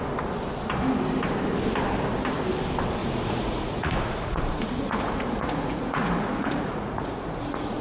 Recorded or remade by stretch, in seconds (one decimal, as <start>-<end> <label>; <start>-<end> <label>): 0.0-3.0 recorded; 3.0-7.8 remade